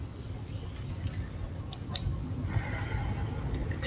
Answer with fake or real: real